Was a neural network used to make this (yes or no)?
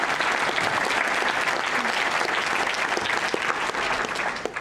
no